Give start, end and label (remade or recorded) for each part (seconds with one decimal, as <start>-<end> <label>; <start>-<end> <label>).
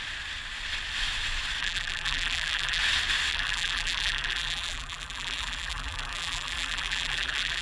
0.0-1.6 recorded; 1.6-2.8 remade; 2.8-3.3 recorded; 3.3-7.6 remade